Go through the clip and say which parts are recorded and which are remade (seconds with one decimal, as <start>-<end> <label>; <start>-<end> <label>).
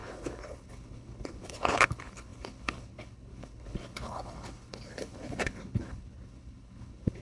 0.0-7.2 remade